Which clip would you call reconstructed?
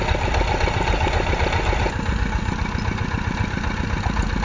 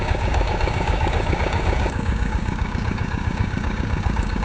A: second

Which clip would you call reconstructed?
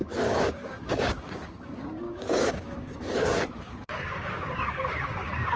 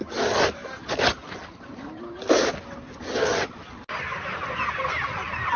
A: first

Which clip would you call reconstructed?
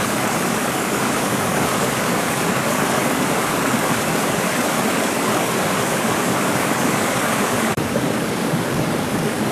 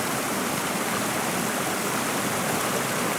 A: first